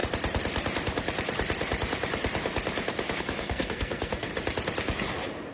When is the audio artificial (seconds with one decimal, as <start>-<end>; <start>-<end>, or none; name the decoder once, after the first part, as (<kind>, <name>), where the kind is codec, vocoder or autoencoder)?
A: 3.2-4.3 (codec, SNAC)